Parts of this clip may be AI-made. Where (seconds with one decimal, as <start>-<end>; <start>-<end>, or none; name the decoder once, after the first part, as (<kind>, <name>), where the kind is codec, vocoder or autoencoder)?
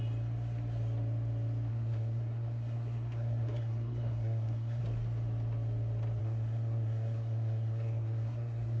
1.7-4.8 (codec, SNAC); 6.2-8.8